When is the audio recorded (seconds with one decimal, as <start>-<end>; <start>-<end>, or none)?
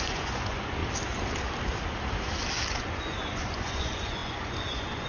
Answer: 0.8-2.7